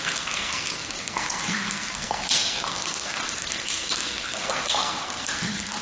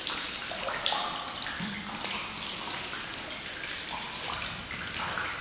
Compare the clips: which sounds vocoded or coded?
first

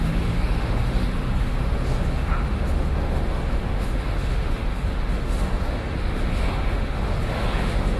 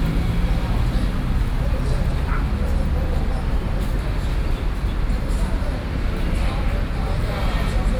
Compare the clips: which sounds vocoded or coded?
first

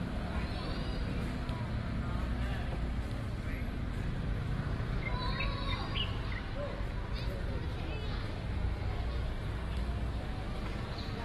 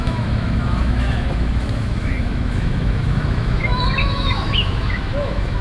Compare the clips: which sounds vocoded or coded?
second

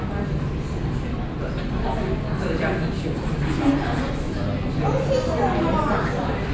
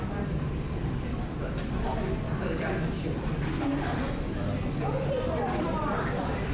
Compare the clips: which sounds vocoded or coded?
second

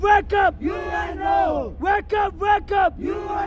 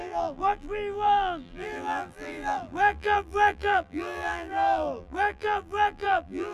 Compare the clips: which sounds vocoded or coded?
second